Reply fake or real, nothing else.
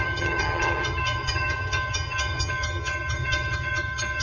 fake